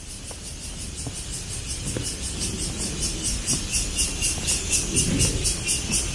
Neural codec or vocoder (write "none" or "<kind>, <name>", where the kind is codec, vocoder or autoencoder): none